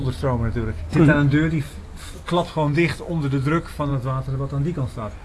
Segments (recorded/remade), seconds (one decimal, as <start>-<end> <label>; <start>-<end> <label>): 0.0-5.2 recorded